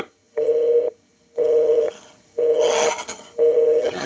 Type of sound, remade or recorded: remade